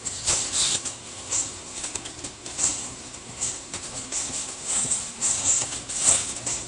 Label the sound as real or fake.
fake